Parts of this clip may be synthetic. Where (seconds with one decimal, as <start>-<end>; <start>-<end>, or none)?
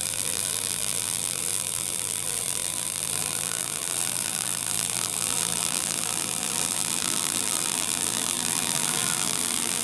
0.0-9.8